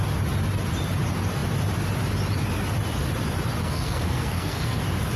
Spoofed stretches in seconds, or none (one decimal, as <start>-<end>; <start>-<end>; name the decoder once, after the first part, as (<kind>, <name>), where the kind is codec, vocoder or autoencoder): 3.6-4.8 (codec, SNAC)